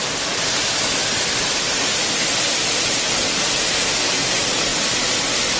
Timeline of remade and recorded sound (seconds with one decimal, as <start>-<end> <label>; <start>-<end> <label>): 0.0-5.6 recorded